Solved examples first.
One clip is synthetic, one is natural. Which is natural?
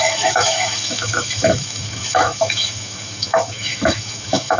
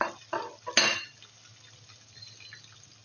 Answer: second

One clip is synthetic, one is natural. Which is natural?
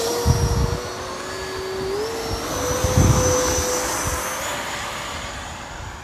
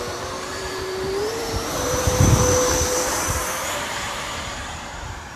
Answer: first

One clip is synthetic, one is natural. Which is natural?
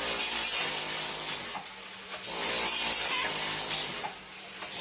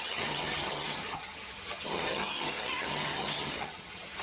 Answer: first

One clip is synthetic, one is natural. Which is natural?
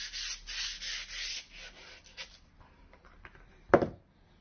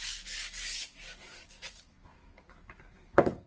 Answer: first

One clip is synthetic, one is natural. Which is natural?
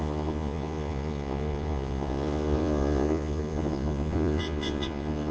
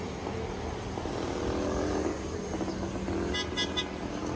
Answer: second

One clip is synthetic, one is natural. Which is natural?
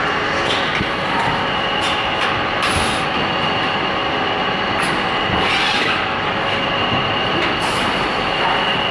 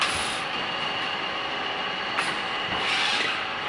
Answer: first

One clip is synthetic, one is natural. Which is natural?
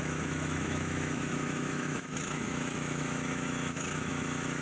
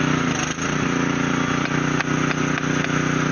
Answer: second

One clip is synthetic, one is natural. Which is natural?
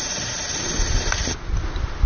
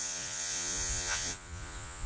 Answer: first